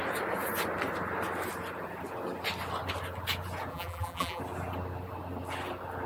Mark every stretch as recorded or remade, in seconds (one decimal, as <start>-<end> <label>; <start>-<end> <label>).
0.0-3.7 recorded; 3.7-4.4 remade; 4.4-6.1 recorded